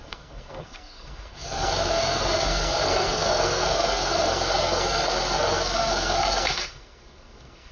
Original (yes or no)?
no